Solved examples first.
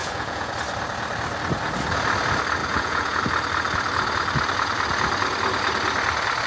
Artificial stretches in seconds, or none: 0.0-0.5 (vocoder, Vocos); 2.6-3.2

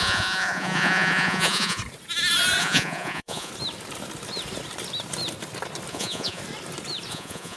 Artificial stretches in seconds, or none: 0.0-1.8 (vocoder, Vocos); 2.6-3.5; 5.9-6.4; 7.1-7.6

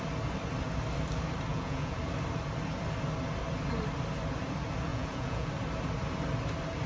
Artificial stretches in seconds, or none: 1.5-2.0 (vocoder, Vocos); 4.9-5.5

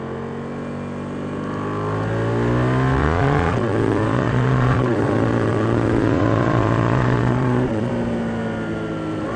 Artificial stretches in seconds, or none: 3.0-7.9 (vocoder, Vocos)

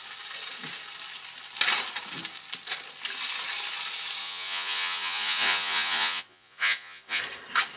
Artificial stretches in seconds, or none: 4.2-7.2 (vocoder, Vocos)

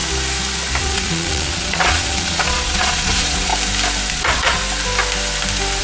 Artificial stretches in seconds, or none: 0.8-3.5 (vocoder, Vocos); 4.1-4.6